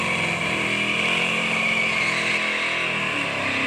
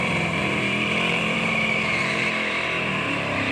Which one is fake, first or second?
second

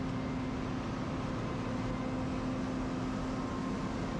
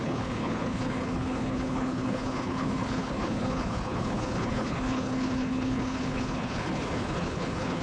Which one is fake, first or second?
second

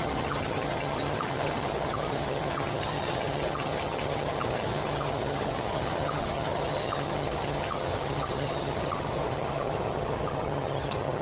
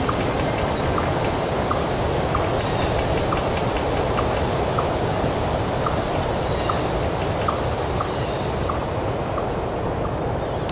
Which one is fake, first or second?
first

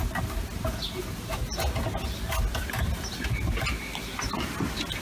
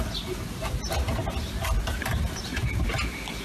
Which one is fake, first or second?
second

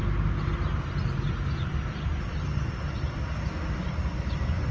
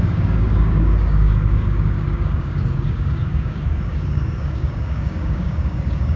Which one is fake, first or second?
second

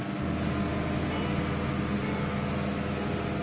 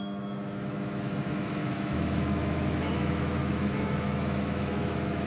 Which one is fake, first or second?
second